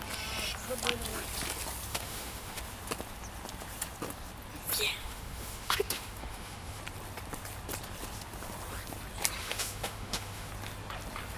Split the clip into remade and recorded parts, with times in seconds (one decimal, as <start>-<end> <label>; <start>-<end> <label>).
0.0-1.9 recorded; 1.9-2.6 remade; 2.6-5.0 recorded; 5.0-6.8 remade; 6.8-9.4 recorded; 9.4-10.5 remade; 10.5-11.4 recorded